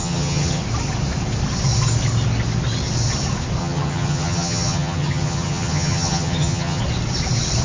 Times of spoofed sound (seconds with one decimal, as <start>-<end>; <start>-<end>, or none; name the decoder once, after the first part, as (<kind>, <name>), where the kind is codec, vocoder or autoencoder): 0.0-0.6 (vocoder, HiFi-GAN); 3.6-6.8